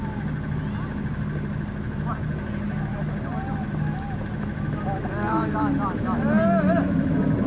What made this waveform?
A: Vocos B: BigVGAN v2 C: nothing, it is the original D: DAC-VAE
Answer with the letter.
C